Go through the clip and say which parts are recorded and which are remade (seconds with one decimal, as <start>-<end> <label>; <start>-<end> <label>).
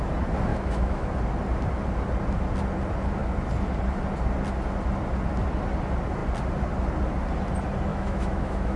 0.0-0.5 recorded; 0.5-1.1 remade; 1.1-7.9 recorded; 7.9-8.8 remade